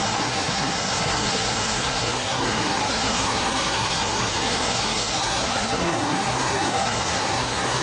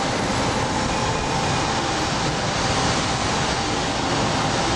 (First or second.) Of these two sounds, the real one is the second